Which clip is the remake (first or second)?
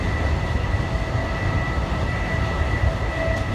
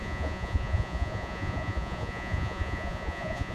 second